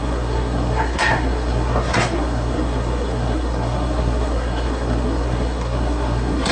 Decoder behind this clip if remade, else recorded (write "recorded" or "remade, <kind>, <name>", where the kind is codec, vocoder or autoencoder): remade, codec, SNAC